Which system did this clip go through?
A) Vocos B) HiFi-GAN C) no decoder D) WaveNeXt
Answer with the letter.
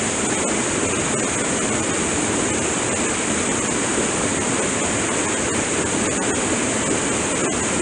C